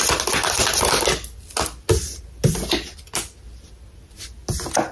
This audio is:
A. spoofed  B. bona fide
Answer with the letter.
B